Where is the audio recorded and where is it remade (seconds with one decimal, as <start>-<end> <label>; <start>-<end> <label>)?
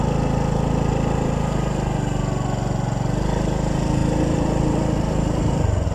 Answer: 0.0-5.9 recorded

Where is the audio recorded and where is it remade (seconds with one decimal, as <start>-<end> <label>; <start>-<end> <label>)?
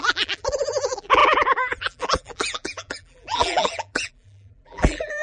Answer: 0.0-5.2 remade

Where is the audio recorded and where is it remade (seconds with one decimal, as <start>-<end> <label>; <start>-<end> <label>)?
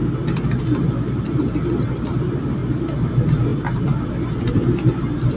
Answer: 0.0-0.6 recorded; 0.6-3.5 remade; 3.5-4.0 recorded; 4.0-5.4 remade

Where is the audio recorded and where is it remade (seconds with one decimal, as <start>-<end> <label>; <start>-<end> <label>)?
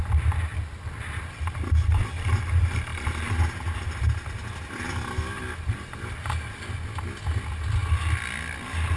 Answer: 0.0-9.0 recorded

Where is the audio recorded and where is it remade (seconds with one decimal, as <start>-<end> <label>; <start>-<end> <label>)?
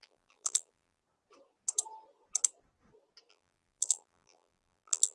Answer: 0.0-1.0 remade; 1.0-3.3 recorded; 3.3-5.1 remade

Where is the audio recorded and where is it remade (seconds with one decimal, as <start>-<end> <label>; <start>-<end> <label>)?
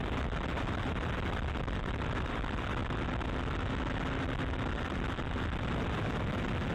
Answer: 0.0-2.8 remade; 2.8-4.7 recorded; 4.7-6.7 remade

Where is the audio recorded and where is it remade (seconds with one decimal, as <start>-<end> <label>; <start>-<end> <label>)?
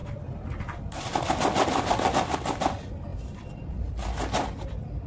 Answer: 0.0-5.1 recorded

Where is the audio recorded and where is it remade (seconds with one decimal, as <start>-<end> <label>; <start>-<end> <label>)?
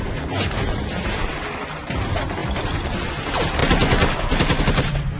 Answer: 0.0-1.2 remade; 1.2-1.7 recorded; 1.7-3.6 remade; 3.6-4.6 recorded; 4.6-5.2 remade